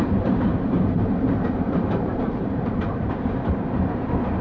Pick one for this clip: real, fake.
fake